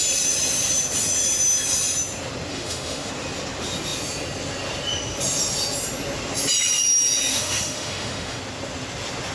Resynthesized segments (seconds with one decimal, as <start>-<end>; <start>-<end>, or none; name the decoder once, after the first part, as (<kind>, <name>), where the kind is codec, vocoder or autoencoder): 2.5-3.1 (autoencoder, DAC-VAE); 7.3-8.4